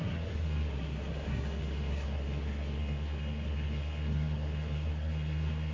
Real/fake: fake